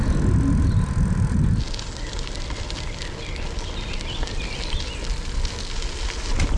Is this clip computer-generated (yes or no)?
no